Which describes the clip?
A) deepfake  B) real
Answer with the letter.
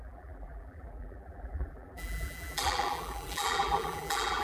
A